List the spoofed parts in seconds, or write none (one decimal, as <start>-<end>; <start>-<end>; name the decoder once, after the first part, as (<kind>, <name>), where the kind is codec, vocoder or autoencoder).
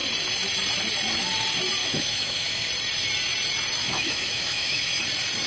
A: 1.8-2.7 (autoencoder, DAC-VAE); 3.8-5.0